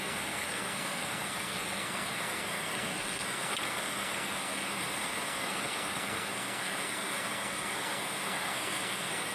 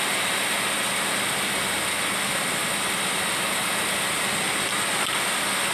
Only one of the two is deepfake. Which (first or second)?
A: first